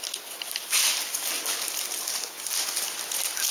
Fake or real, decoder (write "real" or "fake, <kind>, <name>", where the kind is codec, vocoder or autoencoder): real